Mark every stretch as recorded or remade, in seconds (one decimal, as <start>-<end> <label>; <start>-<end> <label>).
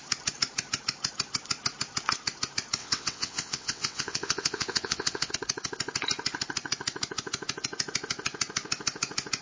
0.0-2.8 recorded; 2.8-5.3 remade; 5.3-9.4 recorded